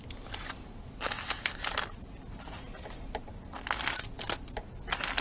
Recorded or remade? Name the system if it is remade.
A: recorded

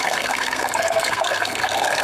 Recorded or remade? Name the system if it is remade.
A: remade, codec, SNAC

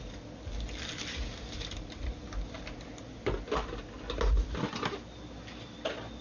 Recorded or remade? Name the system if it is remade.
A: recorded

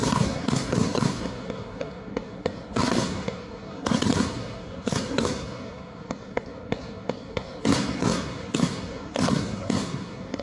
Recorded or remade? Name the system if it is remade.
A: remade, codec, SNAC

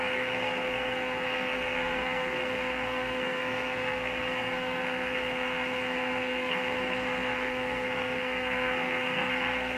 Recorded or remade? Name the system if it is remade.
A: remade, codec, SNAC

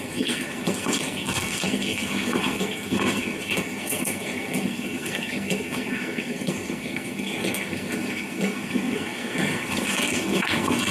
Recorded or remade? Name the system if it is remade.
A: remade, codec, SNAC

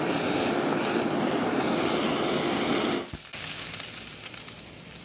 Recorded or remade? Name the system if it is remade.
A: recorded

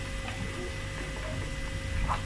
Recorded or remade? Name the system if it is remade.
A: recorded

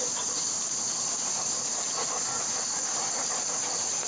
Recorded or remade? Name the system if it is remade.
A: recorded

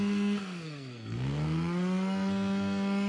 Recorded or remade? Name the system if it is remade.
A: remade, codec, SNAC